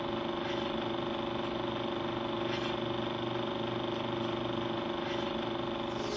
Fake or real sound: real